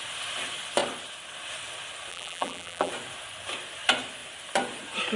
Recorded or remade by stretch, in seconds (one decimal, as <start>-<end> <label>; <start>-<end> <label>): 0.0-2.1 recorded; 2.1-2.9 remade; 2.9-5.2 recorded